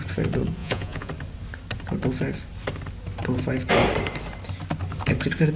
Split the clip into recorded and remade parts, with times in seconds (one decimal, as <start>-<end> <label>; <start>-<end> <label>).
0.0-0.6 recorded; 0.6-1.1 remade; 1.1-5.6 recorded